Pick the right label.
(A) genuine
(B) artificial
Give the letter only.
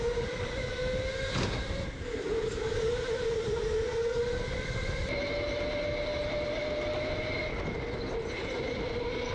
A